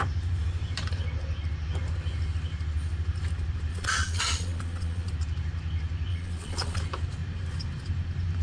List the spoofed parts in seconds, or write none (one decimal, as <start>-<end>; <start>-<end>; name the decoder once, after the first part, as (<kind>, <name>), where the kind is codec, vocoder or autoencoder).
3.7-5.1 (vocoder, Vocos); 6.1-6.8